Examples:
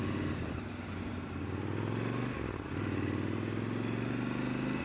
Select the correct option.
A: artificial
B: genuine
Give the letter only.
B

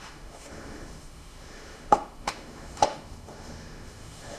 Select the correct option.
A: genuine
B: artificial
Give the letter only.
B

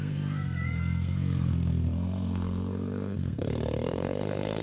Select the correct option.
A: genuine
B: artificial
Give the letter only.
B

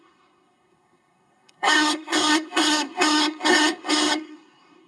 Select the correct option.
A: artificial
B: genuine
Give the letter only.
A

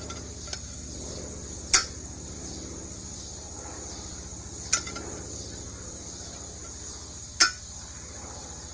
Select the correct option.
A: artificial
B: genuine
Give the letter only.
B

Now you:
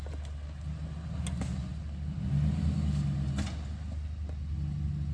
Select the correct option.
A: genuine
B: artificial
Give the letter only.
A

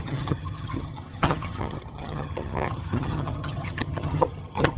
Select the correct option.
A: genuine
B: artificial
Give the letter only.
B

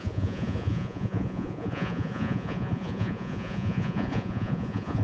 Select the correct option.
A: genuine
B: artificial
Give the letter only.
B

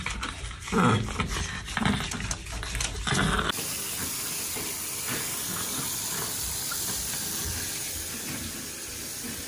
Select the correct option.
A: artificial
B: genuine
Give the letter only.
B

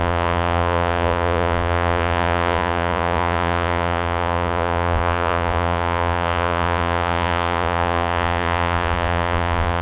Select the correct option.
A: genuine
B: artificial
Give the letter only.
B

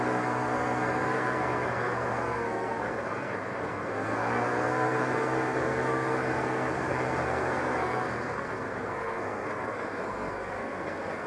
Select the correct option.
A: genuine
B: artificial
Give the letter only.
B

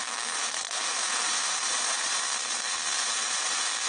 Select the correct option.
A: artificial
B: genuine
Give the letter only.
A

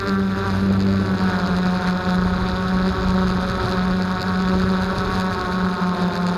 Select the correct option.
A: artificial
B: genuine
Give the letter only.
B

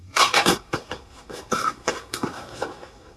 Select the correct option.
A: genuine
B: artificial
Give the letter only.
B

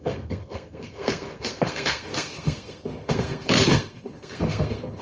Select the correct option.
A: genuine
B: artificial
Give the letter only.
B